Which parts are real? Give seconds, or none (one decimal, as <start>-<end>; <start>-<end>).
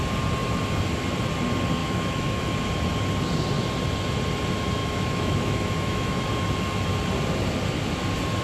0.0-1.8; 2.4-4.8; 6.3-8.4